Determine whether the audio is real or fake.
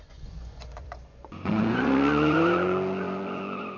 fake